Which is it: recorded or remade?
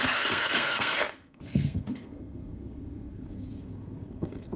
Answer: remade